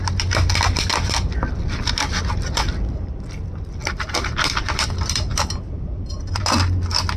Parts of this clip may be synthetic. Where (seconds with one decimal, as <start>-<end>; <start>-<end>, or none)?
0.9-3.3; 3.8-6.4

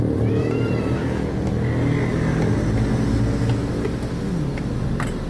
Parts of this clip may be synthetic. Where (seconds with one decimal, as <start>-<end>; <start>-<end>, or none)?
0.0-1.5; 4.7-5.3

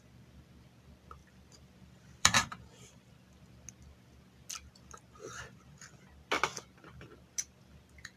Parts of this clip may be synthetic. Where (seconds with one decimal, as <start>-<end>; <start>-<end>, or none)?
1.2-3.1

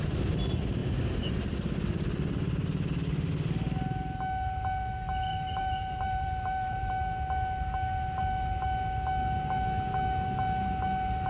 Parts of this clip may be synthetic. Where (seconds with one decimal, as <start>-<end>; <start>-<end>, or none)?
5.3-6.9

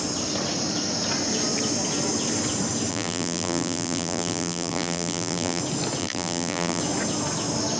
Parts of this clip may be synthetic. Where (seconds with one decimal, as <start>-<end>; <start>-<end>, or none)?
2.9-5.6; 6.0-6.8

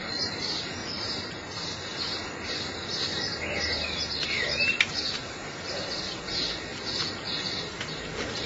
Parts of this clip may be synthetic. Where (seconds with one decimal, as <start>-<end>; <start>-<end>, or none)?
0.8-2.3